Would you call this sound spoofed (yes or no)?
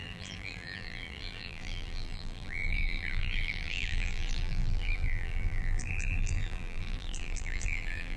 yes